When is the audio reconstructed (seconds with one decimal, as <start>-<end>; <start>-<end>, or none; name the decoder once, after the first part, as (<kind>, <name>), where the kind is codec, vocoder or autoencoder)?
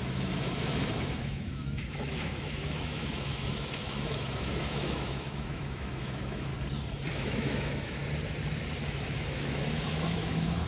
0.0-6.5 (autoencoder, DAC-VAE); 7.1-8.0; 8.8-10.7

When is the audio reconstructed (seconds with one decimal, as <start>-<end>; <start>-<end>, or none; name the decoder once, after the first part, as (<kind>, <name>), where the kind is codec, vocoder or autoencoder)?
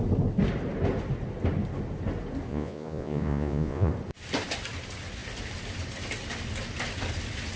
2.5-3.9 (vocoder, Vocos)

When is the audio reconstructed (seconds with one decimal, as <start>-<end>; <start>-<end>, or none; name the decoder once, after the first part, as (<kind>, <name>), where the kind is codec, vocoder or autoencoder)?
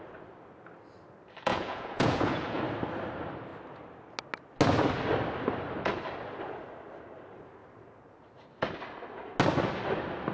1.5-2.6 (vocoder, Vocos)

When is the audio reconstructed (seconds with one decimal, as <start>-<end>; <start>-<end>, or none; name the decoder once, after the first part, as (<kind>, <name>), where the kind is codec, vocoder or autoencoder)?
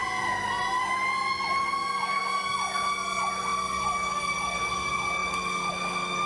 none